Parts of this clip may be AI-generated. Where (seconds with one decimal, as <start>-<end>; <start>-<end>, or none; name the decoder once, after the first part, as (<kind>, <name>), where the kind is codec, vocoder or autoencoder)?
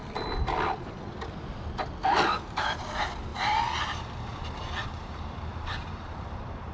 2.3-3.3 (vocoder, BigVGAN v2); 3.9-6.7